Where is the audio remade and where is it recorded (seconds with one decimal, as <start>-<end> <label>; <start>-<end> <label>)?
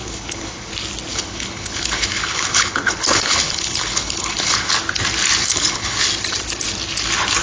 0.0-0.7 remade; 0.7-1.1 recorded; 1.1-4.7 remade; 4.7-5.4 recorded; 5.4-6.0 remade; 6.0-7.4 recorded